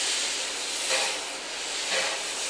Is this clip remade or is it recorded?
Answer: recorded